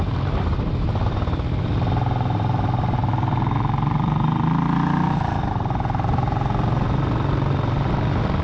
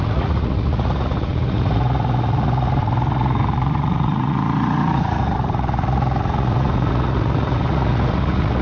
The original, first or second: first